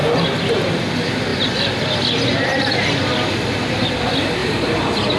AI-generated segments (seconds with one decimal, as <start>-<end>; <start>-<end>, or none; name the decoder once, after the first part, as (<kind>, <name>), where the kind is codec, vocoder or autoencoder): 4.4-5.2 (vocoder, BigVGAN v2)